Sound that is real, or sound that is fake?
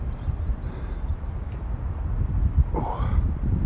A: fake